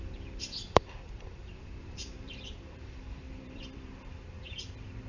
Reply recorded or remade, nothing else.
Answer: remade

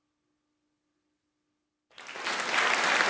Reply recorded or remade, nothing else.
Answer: recorded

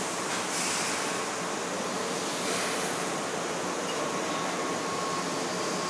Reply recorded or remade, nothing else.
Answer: recorded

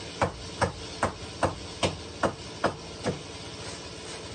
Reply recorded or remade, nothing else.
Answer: recorded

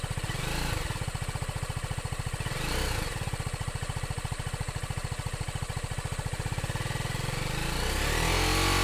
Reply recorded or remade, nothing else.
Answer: recorded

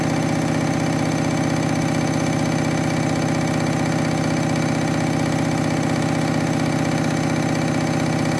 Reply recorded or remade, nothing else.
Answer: recorded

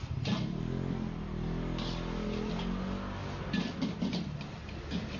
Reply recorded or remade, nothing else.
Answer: recorded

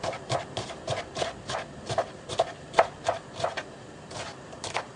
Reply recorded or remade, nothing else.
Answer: remade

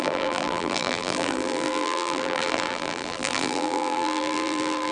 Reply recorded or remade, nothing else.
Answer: remade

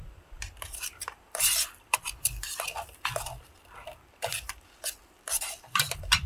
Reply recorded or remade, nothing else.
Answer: remade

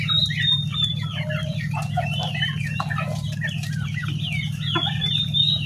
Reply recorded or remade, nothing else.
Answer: remade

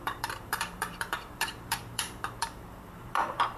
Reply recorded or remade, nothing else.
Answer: remade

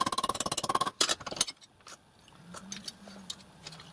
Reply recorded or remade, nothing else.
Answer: recorded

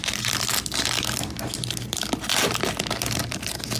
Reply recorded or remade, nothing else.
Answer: recorded